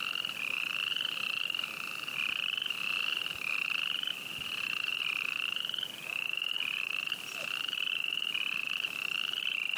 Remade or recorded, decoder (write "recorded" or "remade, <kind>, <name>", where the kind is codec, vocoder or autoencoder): recorded